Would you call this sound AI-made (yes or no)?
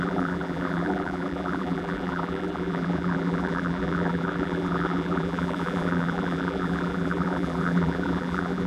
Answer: yes